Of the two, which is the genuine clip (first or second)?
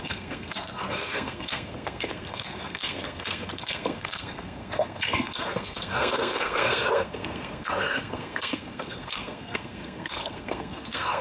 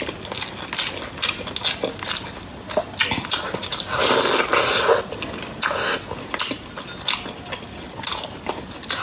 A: second